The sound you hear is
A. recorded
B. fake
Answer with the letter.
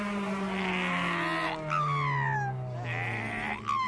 A